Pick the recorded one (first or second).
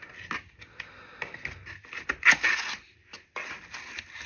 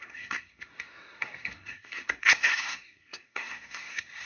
first